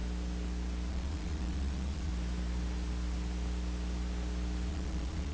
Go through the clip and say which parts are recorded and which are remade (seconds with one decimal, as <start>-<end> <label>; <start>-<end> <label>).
0.0-0.9 recorded; 0.9-2.1 remade; 2.1-4.7 recorded; 4.7-5.3 remade

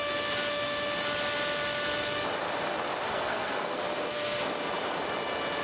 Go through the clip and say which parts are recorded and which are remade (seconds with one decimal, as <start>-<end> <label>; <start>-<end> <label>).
0.0-3.1 recorded; 3.1-3.8 remade; 3.8-5.6 recorded

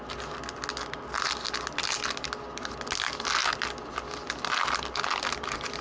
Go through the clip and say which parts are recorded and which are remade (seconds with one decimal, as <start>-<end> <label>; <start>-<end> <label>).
0.0-5.8 recorded

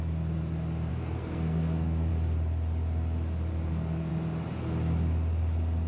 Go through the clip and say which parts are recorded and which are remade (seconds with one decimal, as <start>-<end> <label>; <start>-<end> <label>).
0.0-0.9 recorded; 0.9-2.1 remade; 2.1-3.5 recorded; 3.5-4.1 remade; 4.1-5.9 recorded

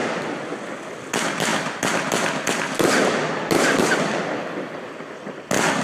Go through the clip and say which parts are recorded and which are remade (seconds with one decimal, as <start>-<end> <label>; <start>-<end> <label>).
0.0-5.8 recorded

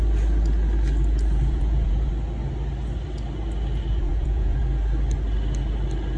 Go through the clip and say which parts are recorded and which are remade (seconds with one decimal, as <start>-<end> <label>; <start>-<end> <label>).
0.0-1.4 recorded; 1.4-2.1 remade; 2.1-4.0 recorded; 4.0-4.6 remade; 4.6-6.2 recorded

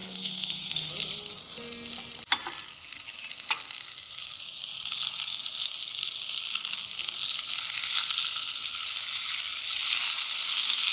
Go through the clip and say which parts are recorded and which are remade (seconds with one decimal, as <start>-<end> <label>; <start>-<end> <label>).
0.0-0.9 remade; 0.9-10.9 recorded

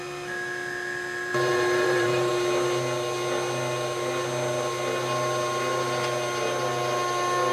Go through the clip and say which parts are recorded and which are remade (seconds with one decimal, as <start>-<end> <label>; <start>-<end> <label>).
0.0-1.3 recorded; 1.3-2.3 remade; 2.3-7.5 recorded